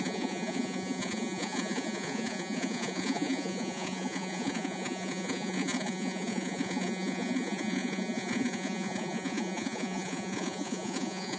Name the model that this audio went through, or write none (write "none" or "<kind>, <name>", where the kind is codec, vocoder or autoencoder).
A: vocoder, Vocos